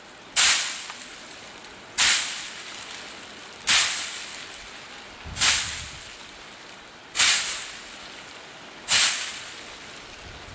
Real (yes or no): yes